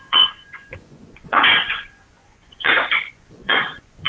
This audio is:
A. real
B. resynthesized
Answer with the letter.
B